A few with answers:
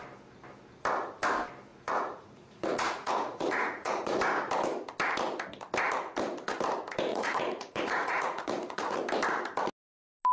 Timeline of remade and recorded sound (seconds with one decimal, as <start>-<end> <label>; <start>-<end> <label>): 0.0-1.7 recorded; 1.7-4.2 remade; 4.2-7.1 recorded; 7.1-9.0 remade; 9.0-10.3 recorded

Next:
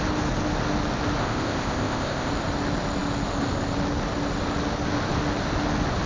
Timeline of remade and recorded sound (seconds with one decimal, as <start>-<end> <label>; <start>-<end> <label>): 0.0-1.2 recorded; 1.2-2.3 remade; 2.3-6.1 recorded

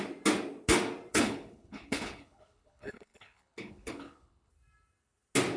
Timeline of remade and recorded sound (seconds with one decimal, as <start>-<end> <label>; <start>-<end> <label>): 0.0-1.1 recorded; 1.1-4.5 remade; 4.5-5.6 recorded